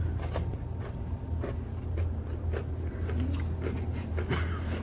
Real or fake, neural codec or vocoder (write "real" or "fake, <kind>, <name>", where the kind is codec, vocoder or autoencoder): real